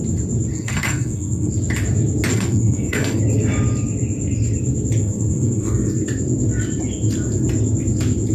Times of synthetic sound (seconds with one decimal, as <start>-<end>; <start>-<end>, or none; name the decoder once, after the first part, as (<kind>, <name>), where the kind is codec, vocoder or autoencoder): 0.5-1.5 (codec, SNAC); 2.3-3.2; 5.0-5.9